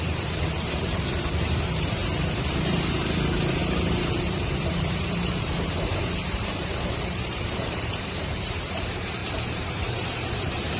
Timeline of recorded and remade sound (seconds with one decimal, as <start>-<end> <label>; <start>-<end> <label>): 0.0-10.8 remade